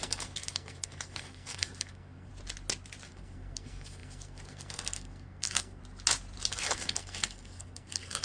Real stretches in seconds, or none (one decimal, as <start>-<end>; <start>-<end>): 2.3-3.1; 5.8-6.5